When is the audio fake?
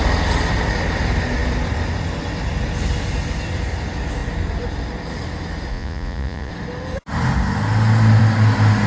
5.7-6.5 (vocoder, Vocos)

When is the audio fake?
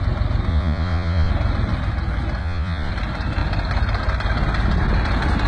0.5-1.3 (vocoder, Vocos); 2.4-2.9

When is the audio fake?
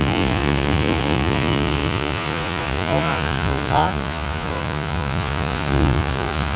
0.0-6.6 (vocoder, Vocos)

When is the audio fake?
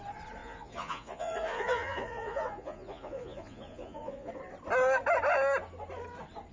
0.4-4.3 (vocoder, Vocos)